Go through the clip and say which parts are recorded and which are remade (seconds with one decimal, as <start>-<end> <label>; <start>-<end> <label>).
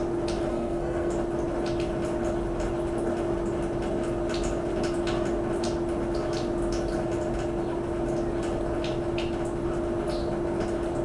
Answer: 0.0-0.5 recorded; 0.5-1.1 remade; 1.1-11.0 recorded